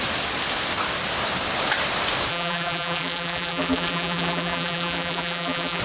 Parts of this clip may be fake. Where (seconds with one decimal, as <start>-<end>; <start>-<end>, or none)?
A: 2.3-5.8